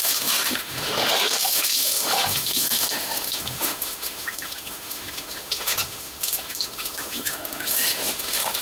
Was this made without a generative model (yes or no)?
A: no